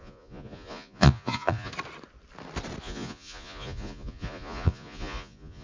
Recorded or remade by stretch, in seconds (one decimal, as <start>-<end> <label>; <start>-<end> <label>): 0.0-1.7 remade; 1.7-2.8 recorded; 2.8-5.6 remade